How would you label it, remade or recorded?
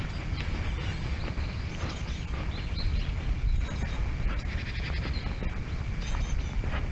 recorded